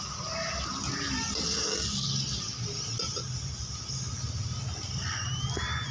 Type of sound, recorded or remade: recorded